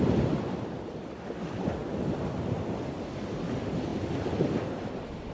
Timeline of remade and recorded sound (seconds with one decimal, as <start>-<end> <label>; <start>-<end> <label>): 0.0-3.9 remade; 3.9-4.5 recorded; 4.5-5.3 remade